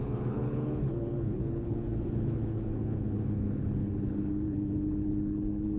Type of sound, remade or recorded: remade